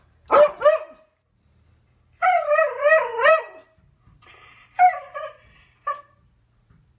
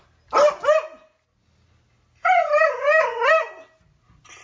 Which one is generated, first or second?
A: first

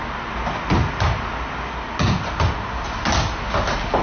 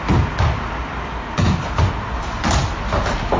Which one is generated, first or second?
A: second